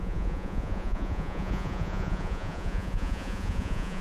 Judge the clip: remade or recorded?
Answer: remade